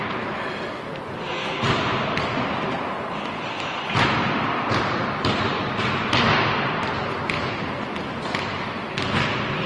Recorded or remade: recorded